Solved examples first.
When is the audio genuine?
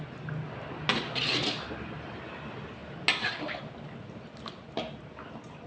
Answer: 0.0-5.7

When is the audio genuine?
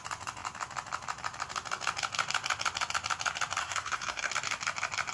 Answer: 0.0-3.6; 4.3-5.1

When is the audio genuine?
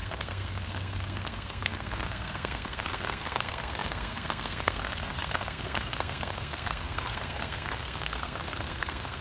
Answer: none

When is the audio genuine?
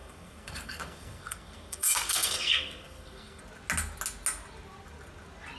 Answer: 3.4-5.6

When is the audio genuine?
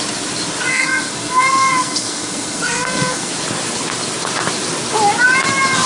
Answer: 0.0-0.7; 3.3-5.9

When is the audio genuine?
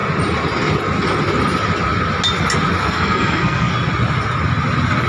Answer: 0.0-2.8; 3.7-5.1